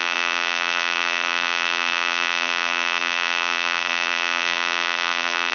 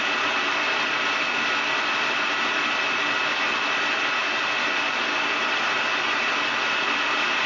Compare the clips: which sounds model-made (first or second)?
first